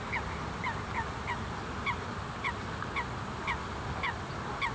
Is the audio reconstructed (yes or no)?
no